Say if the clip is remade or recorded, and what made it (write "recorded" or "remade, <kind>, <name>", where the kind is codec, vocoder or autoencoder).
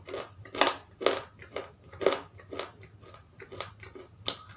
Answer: recorded